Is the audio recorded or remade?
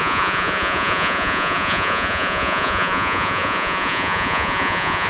remade